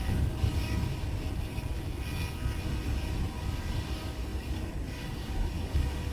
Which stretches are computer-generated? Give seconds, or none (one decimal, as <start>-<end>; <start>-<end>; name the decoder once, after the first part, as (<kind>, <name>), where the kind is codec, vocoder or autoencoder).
0.0-0.9 (codec, DAC); 3.3-6.1